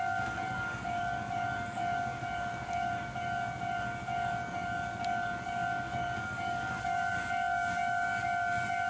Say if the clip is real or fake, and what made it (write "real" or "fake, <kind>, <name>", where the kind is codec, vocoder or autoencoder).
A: fake, codec, DAC